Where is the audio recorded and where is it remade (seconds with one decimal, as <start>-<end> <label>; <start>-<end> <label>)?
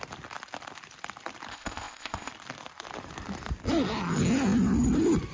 0.0-1.5 recorded; 1.5-2.3 remade; 2.3-5.3 recorded